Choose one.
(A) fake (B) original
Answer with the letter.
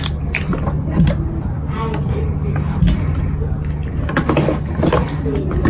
B